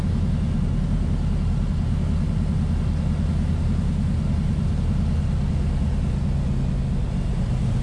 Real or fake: real